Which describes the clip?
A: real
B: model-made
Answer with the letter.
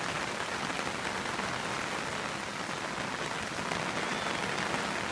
A